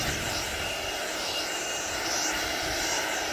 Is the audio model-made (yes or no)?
no